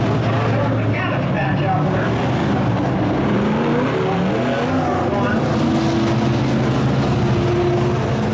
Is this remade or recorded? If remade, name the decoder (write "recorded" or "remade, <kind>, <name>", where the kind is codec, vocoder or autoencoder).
recorded